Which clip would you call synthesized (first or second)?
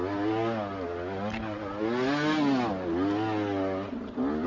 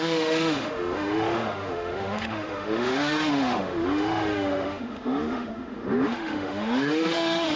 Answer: second